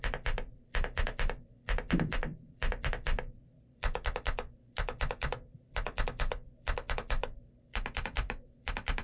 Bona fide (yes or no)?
no